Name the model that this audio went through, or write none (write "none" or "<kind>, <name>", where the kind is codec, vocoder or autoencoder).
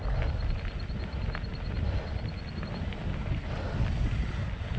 none